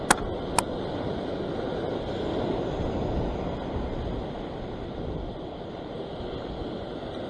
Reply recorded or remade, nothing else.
recorded